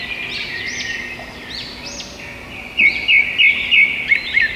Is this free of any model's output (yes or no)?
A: yes